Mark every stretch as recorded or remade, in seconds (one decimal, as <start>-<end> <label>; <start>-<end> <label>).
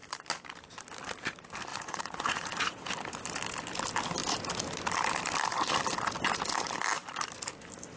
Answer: 0.0-1.7 recorded; 1.7-2.9 remade; 2.9-8.0 recorded